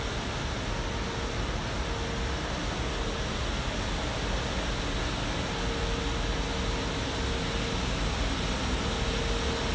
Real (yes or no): yes